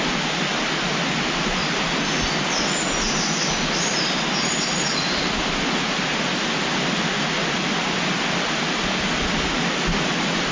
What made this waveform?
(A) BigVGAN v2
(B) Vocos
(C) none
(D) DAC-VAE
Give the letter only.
C